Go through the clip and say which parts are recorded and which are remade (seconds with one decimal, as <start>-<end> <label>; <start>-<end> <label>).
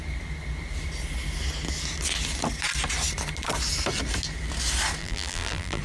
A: 0.0-5.0 recorded; 5.0-5.8 remade